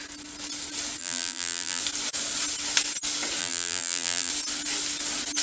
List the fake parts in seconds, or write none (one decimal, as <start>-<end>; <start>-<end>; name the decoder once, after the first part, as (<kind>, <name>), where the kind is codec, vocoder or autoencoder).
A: 1.0-1.8 (vocoder, BigVGAN v2); 3.4-4.3